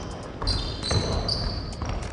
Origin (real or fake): real